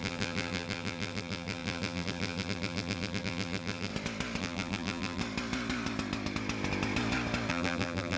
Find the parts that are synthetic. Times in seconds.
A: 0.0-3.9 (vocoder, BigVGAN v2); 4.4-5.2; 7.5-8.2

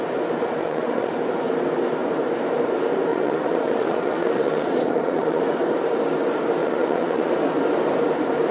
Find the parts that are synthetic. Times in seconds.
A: 0.6-1.1 (vocoder, Vocos); 3.1-5.4; 6.6-7.3

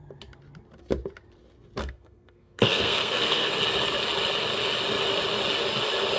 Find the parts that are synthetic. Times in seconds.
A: 1.8-3.6 (codec, SNAC)

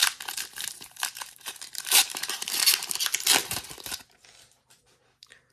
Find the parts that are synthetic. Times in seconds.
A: 0.0-2.5 (vocoder, BigVGAN v2); 3.4-4.8

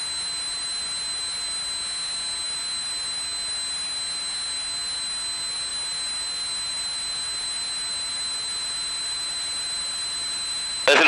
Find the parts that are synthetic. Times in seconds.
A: none